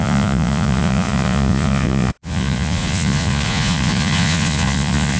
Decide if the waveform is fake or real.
fake